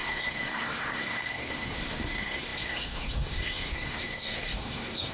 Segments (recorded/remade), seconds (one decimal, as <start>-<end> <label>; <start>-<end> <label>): 0.0-5.1 remade